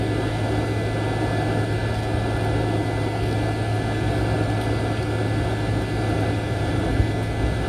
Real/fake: real